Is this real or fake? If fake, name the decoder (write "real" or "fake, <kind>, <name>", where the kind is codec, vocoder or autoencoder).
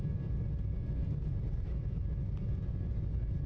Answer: real